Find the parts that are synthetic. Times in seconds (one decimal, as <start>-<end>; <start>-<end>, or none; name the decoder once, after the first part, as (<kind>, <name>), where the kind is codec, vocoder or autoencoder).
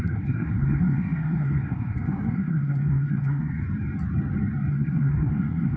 0.0-3.6 (codec, SNAC); 4.7-5.8